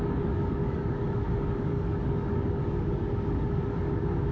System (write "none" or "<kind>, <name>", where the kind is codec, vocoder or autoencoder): codec, DAC